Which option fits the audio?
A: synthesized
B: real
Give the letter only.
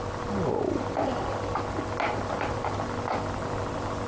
A